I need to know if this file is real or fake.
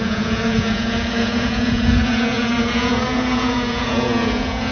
fake